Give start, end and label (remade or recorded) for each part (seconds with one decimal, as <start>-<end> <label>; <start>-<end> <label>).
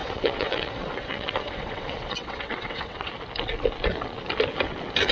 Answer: 0.0-3.1 remade; 3.1-5.1 recorded